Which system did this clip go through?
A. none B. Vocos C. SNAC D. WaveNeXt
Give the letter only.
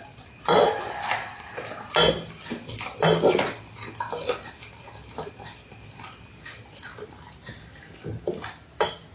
A